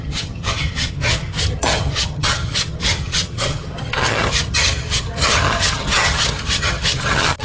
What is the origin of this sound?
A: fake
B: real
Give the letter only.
A